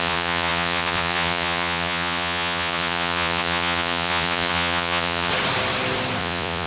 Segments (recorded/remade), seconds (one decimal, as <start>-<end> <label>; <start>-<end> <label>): 0.0-5.3 remade; 5.3-6.2 recorded; 6.2-6.7 remade